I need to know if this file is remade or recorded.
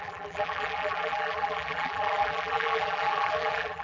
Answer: remade